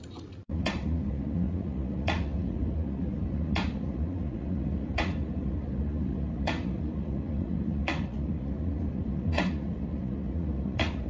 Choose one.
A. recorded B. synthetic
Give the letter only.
B